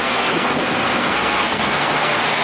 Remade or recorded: remade